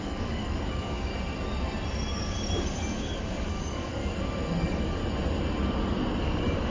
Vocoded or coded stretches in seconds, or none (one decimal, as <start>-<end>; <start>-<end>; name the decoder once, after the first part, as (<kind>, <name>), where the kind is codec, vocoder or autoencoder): 0.0-1.1 (codec, DAC); 2.1-4.0; 4.6-5.0; 6.2-6.7